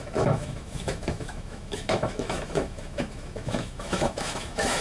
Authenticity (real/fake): fake